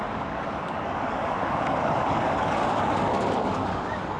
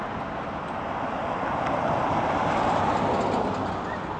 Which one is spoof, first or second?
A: first